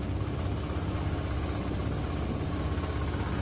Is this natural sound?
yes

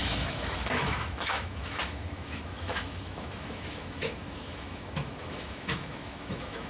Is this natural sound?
no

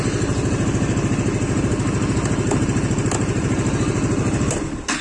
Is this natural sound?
yes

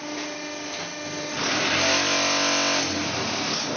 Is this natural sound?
yes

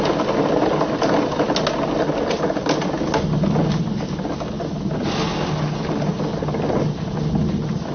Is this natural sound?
yes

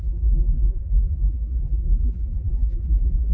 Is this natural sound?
no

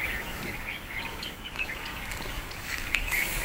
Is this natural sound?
no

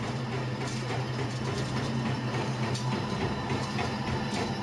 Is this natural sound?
no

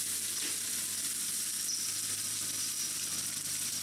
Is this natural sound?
yes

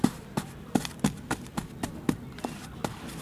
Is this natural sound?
yes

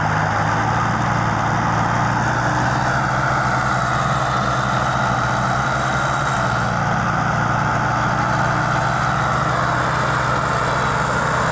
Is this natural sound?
yes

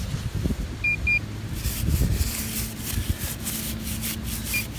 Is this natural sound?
yes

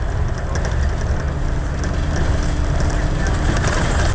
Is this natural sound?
yes